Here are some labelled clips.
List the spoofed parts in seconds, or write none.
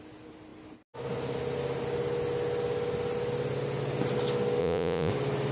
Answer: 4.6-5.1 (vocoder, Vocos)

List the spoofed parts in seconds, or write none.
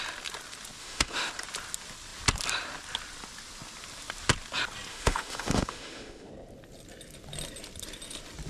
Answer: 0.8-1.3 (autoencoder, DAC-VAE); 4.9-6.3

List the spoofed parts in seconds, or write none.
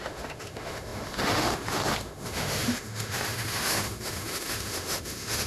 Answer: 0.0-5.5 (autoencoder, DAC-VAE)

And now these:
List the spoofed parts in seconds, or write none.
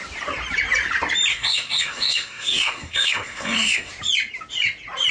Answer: 1.3-3.9 (codec, SNAC)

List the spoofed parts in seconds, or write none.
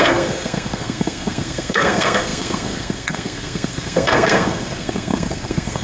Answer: 0.0-5.8 (codec, SNAC)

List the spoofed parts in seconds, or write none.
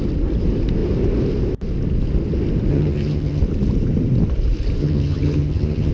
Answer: 2.7-3.4 (vocoder, HiFi-GAN); 4.8-5.9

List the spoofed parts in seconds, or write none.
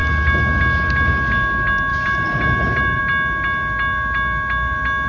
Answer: 1.9-3.0 (vocoder, BigVGAN v2)